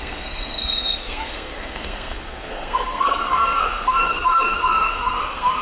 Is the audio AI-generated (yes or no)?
yes